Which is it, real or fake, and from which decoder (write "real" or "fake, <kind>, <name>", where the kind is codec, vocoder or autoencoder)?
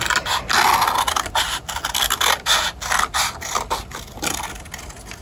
real